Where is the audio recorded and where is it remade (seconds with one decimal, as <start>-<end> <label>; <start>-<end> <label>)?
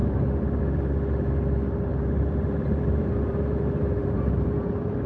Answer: 0.0-0.6 remade; 0.6-1.9 recorded; 1.9-5.1 remade